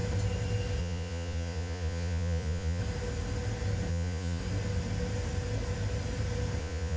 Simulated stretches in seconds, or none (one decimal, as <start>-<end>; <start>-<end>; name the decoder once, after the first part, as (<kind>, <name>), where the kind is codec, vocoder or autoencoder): 0.8-2.8 (vocoder, Vocos); 3.9-4.4; 6.6-7.0